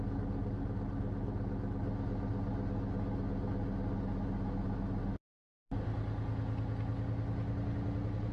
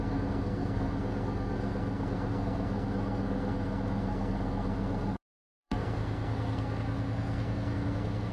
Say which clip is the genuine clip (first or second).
first